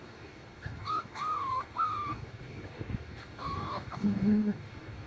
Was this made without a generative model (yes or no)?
no